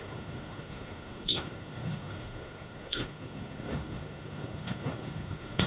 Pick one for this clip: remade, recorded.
remade